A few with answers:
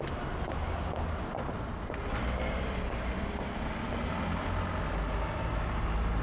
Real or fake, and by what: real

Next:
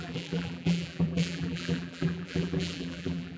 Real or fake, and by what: fake, vocoder, BigVGAN v2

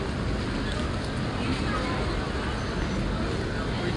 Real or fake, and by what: real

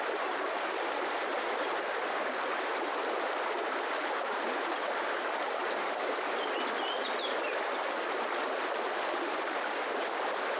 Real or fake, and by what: real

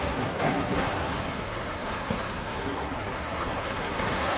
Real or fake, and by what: fake, codec, SNAC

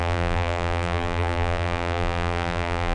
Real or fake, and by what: fake, vocoder, BigVGAN v2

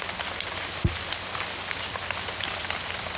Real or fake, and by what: real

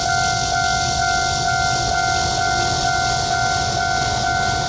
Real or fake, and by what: real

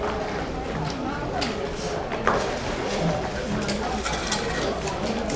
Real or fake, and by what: real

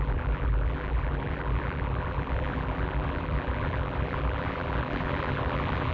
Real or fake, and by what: fake, vocoder, BigVGAN v2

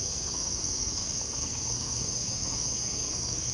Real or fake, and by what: fake, codec, SNAC